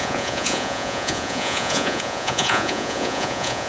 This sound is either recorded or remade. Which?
remade